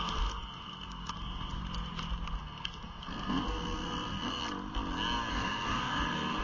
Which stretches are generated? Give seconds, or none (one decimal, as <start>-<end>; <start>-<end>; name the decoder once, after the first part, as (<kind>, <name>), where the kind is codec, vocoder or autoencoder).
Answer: 0.0-1.6 (codec, SNAC); 2.4-4.4; 5.3-6.4

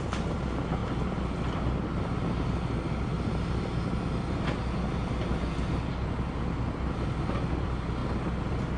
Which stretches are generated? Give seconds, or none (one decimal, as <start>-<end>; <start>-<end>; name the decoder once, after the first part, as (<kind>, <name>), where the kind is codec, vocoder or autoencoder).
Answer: none

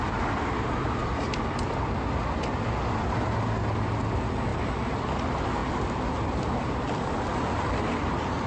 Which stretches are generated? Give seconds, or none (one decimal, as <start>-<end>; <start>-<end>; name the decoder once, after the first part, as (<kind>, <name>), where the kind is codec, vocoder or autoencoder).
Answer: 1.0-2.6 (vocoder, BigVGAN v2); 4.5-5.0; 5.6-8.5

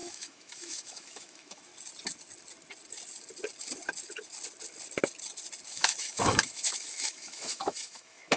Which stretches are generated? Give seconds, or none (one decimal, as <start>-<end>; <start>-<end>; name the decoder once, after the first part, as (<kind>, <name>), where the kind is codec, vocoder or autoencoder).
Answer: 0.0-1.7 (autoencoder, DAC-VAE); 5.7-8.4